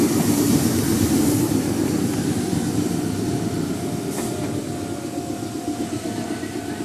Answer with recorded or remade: recorded